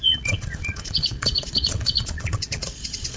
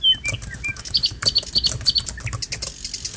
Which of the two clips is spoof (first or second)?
first